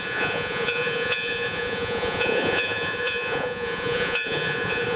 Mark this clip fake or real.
fake